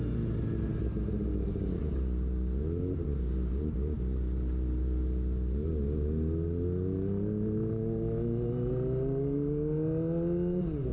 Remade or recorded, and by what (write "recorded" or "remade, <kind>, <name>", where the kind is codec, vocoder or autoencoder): recorded